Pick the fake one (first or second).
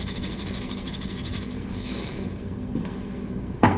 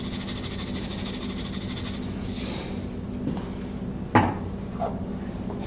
first